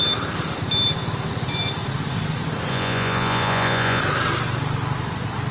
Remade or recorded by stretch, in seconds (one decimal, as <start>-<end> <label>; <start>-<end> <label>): 0.0-2.7 recorded; 2.7-4.0 remade; 4.0-5.5 recorded